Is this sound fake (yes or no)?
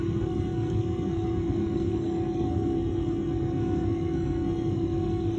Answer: yes